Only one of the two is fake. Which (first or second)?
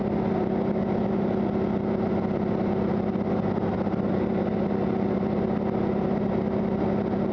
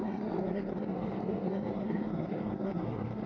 second